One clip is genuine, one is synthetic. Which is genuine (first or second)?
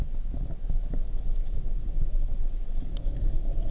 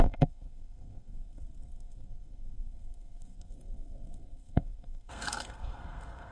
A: first